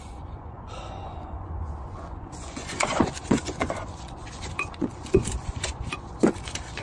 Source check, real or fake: fake